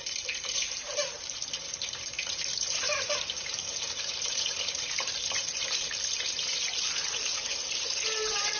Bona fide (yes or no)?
no